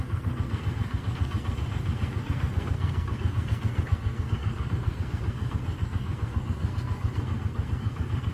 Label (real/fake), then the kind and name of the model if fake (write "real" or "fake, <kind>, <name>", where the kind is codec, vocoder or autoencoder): fake, codec, SNAC